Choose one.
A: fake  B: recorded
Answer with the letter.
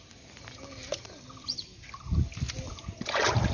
B